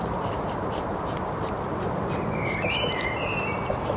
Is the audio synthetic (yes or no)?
yes